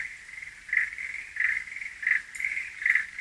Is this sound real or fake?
real